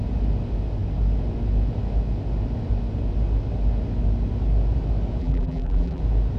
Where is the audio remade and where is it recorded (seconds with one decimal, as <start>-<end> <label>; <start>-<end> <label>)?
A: 0.0-5.2 recorded; 5.2-6.0 remade; 6.0-6.4 recorded